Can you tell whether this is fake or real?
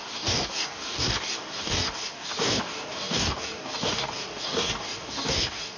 fake